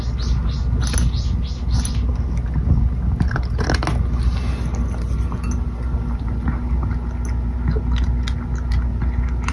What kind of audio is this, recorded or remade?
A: recorded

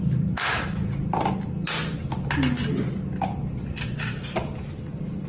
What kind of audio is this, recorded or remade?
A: recorded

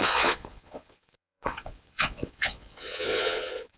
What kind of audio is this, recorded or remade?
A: remade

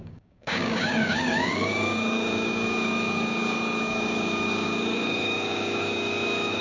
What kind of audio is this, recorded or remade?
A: remade